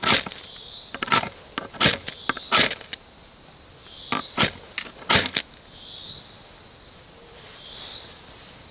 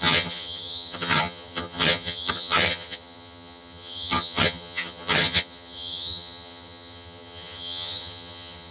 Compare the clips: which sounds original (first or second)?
first